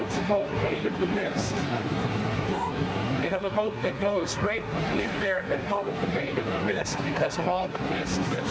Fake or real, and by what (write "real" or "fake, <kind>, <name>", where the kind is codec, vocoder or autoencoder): fake, codec, SNAC